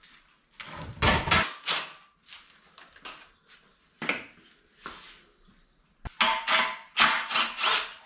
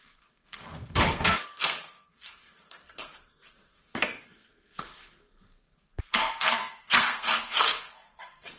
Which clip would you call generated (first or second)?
second